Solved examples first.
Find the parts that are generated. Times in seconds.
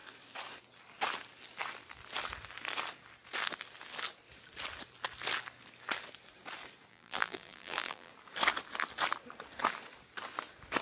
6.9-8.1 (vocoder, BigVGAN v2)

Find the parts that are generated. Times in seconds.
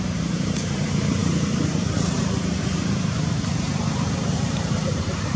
0.0-5.4 (vocoder, BigVGAN v2)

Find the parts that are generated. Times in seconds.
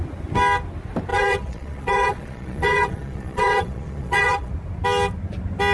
1.1-4.5 (vocoder, Vocos)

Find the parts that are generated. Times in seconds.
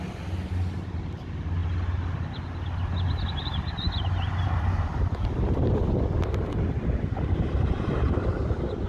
none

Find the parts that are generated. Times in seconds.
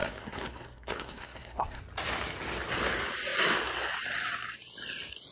0.0-1.8 (codec, SNAC)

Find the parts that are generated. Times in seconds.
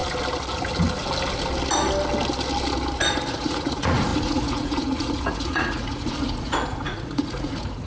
3.3-7.9 (vocoder, Vocos)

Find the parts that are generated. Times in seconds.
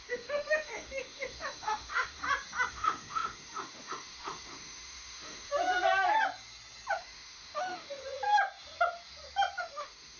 0.0-2.2 (autoencoder, DAC-VAE); 2.7-5.5; 6.9-8.0; 9.6-10.2